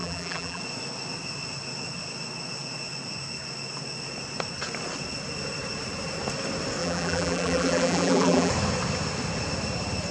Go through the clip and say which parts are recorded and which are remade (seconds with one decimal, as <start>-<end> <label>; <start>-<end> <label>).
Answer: 0.0-0.6 remade; 0.6-6.8 recorded; 6.8-8.5 remade; 8.5-10.1 recorded